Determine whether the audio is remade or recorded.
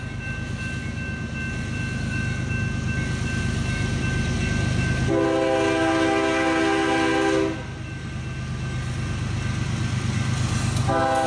recorded